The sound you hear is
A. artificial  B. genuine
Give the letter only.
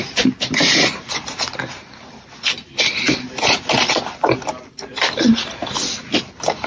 B